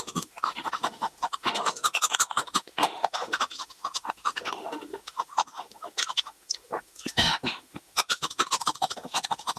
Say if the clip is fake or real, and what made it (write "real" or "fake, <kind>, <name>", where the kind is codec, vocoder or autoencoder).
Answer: fake, autoencoder, DAC-VAE